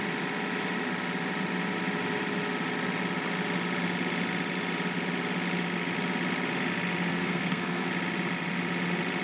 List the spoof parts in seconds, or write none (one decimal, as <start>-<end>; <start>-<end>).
7.1-7.9